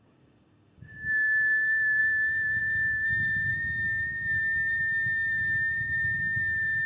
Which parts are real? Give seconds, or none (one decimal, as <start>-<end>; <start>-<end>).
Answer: 2.0-2.6